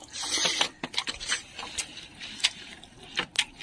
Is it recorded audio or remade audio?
recorded